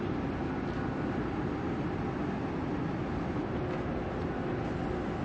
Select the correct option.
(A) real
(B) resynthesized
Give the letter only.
A